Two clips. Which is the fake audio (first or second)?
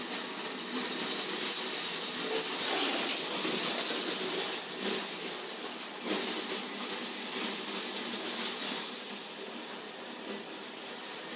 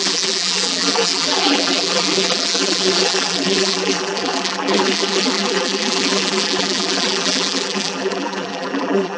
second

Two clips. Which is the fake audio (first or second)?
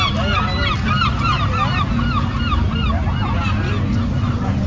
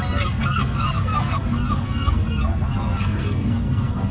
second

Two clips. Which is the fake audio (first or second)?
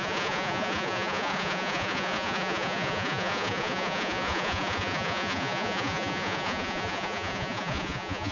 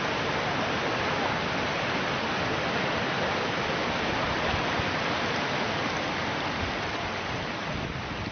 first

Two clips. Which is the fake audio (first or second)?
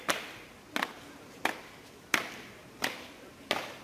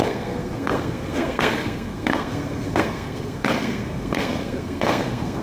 second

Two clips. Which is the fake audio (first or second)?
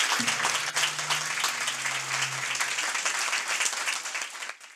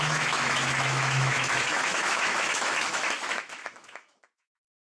second